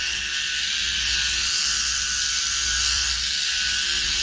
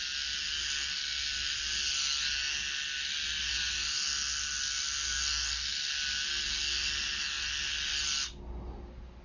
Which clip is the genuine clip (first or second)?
second